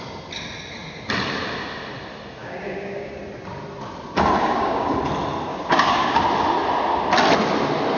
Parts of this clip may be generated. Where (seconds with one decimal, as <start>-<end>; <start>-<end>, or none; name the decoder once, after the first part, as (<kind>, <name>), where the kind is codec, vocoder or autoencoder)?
2.4-3.2 (codec, DAC); 4.4-4.9; 5.5-6.2